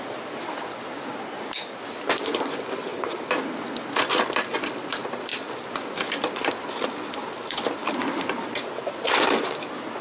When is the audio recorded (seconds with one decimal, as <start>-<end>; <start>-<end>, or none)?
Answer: 1.1-1.9; 2.9-4.2